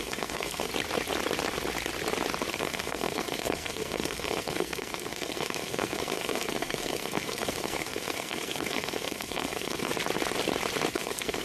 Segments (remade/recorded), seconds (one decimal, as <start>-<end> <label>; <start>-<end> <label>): 0.0-0.7 remade; 0.7-2.5 recorded; 2.5-9.9 remade; 9.9-10.9 recorded; 10.9-11.4 remade